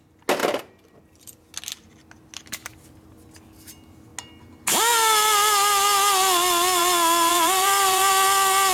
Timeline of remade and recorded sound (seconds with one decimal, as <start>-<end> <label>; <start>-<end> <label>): 0.0-0.4 recorded; 0.4-1.0 remade; 1.0-7.3 recorded; 7.3-8.1 remade; 8.1-8.7 recorded

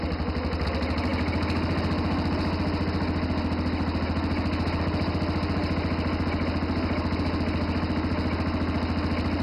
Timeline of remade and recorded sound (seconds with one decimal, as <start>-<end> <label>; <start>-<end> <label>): 0.0-9.4 recorded

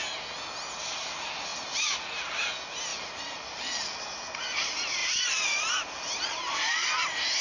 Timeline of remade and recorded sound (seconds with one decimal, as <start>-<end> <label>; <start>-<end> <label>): 0.0-2.9 recorded; 2.9-3.8 remade; 3.8-5.0 recorded; 5.0-7.4 remade

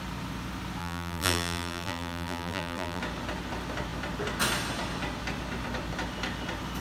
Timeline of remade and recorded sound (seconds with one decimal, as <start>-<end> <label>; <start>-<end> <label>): 0.0-0.8 recorded; 0.8-3.0 remade; 3.0-6.8 recorded

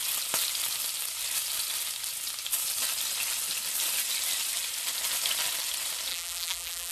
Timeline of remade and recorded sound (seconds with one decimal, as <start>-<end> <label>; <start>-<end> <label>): 0.0-6.1 recorded; 6.1-6.9 remade